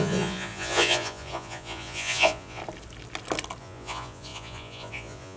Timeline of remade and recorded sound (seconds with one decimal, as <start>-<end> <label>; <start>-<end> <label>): 0.0-2.6 remade; 2.6-3.6 recorded; 3.6-5.4 remade